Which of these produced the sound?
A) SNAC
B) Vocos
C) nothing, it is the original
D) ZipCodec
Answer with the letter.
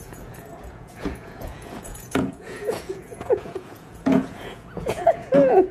B